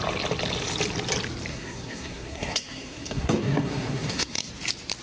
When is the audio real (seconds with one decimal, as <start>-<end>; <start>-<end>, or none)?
0.0-1.5; 4.5-5.0